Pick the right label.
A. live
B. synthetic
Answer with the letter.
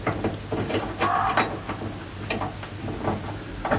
A